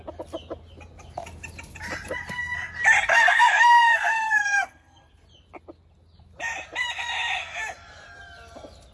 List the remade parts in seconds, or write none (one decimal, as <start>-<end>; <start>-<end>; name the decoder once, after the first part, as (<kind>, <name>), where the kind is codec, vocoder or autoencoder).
3.1-5.1 (codec, SNAC)